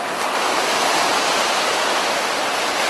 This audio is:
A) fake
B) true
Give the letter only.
B